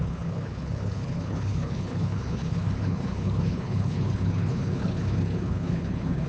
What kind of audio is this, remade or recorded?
remade